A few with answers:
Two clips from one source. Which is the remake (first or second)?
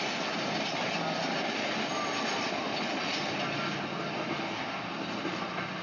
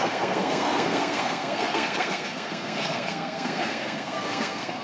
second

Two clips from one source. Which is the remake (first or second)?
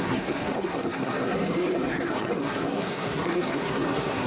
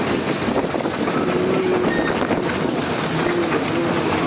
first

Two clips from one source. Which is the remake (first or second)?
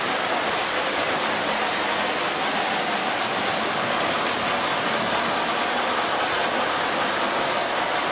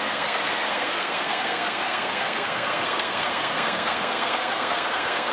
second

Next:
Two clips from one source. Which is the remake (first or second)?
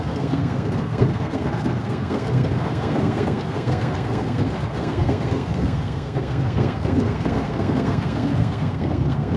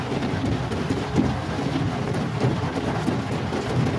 first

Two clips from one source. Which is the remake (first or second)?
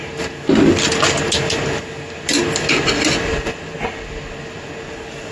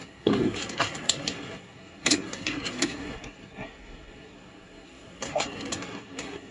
second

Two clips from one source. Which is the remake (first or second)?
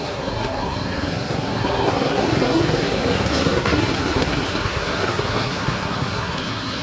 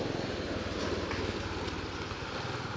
first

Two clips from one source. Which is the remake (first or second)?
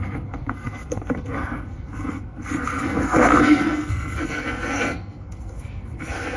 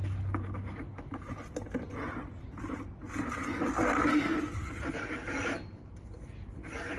first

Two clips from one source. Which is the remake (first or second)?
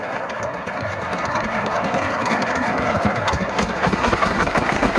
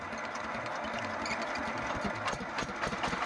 first